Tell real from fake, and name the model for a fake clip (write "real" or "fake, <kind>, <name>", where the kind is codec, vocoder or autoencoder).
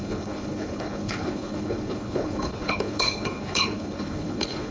fake, codec, HILCodec